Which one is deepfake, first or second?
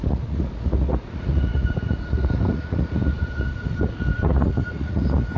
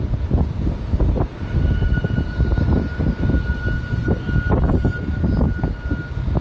first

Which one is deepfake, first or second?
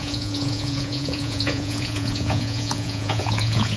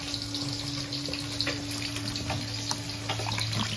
first